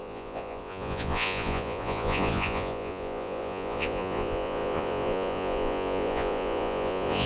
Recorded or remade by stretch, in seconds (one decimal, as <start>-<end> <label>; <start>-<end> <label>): 0.0-7.3 remade